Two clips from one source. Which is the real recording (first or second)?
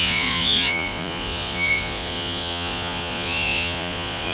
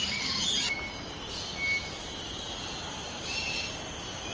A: second